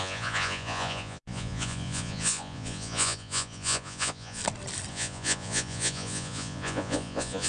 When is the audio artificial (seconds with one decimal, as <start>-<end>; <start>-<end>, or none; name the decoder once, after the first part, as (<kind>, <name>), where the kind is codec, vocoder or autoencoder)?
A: 0.0-4.4 (vocoder, Vocos); 4.9-7.5